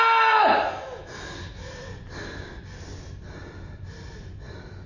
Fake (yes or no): no